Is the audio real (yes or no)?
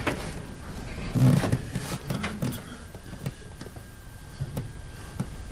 yes